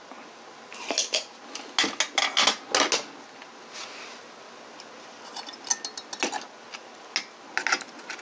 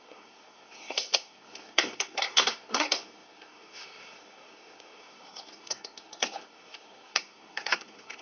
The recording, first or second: first